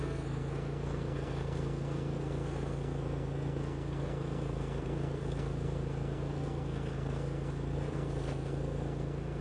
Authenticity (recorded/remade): remade